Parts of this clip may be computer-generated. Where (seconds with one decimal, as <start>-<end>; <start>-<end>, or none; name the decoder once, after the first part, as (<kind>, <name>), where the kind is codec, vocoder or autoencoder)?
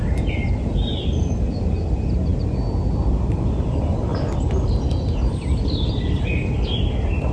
none